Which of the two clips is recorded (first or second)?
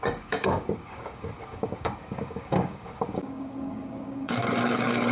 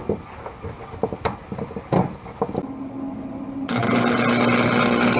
second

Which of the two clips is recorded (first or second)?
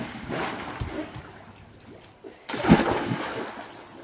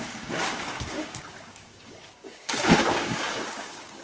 first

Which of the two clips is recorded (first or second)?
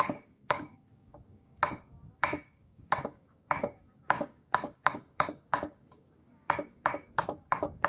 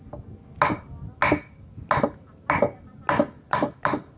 second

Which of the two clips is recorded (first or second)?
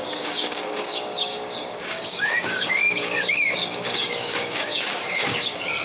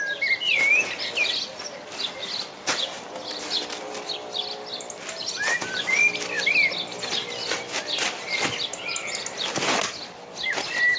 second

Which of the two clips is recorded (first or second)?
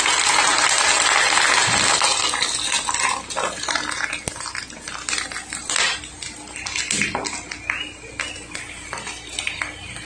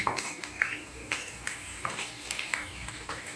first